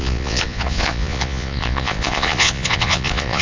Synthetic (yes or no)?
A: yes